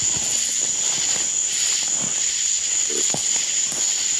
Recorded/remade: recorded